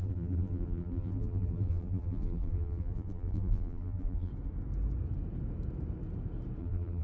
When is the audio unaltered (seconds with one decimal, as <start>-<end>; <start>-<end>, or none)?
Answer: 4.3-6.6